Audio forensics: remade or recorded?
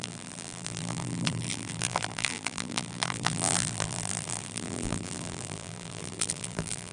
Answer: remade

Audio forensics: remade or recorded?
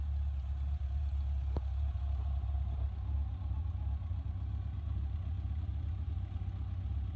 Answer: recorded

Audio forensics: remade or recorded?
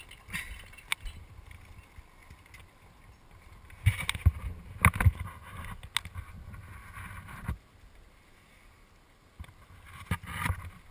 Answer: recorded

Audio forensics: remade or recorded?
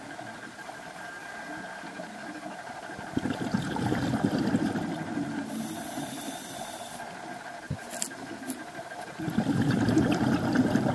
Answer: remade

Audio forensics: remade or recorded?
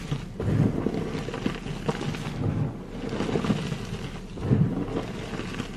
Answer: recorded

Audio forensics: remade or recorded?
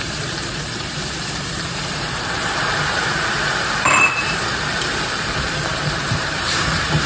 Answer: remade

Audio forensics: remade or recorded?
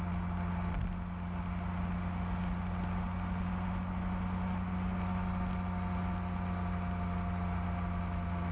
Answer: recorded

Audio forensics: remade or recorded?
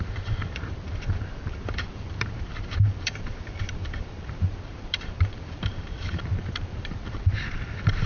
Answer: remade